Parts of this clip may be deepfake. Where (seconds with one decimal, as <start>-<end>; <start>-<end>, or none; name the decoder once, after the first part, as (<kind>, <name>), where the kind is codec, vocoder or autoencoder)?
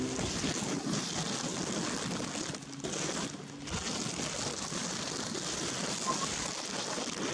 none